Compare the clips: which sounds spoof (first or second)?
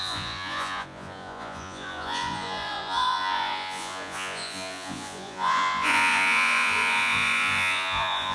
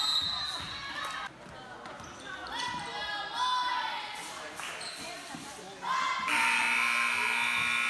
first